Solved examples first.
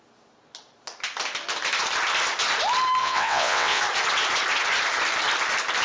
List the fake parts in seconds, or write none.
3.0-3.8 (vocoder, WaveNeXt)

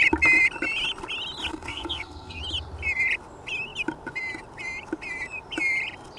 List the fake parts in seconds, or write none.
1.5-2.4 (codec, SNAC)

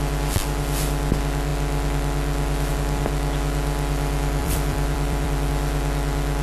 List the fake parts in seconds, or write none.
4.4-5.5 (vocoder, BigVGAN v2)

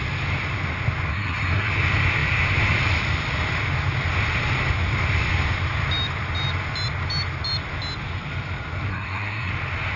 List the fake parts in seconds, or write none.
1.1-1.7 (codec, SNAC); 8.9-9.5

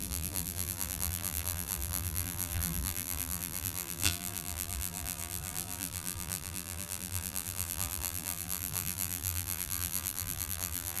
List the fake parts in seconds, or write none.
0.0-11.0 (vocoder, BigVGAN v2)